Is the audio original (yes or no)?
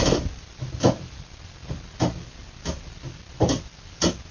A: yes